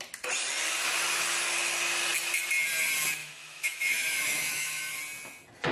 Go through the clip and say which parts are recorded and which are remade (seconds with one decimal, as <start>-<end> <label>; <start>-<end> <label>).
0.0-3.2 recorded; 3.2-5.0 remade; 5.0-5.7 recorded